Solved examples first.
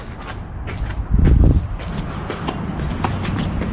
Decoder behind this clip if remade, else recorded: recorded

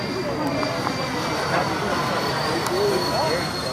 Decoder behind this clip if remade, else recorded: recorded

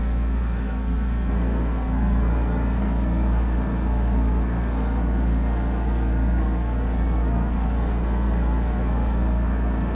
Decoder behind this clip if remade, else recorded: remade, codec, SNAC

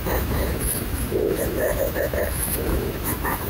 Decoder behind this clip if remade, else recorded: remade, autoencoder, DAC-VAE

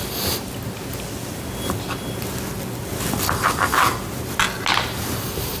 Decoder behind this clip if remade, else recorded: recorded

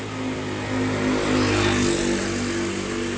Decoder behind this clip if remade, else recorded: recorded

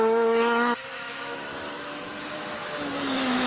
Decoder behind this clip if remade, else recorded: remade, autoencoder, DAC-VAE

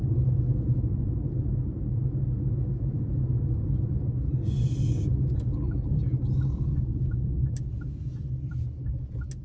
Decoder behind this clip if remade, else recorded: recorded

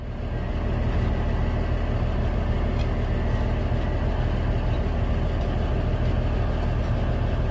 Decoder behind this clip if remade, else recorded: recorded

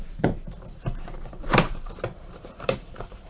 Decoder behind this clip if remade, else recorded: remade, vocoder, BigVGAN v2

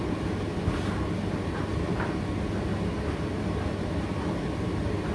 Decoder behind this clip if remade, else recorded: recorded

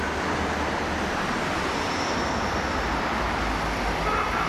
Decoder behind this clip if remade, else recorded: recorded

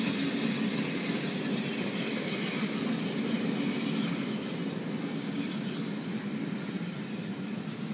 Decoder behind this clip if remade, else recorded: recorded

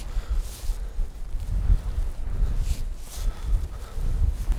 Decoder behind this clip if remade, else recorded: recorded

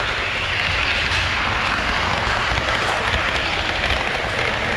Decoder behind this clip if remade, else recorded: recorded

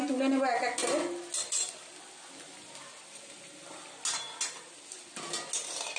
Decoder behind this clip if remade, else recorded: recorded